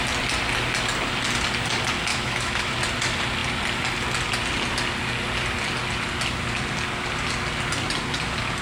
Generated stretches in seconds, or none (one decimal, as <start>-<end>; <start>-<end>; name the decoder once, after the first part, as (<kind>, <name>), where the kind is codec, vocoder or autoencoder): 2.1-2.7 (autoencoder, DAC-VAE)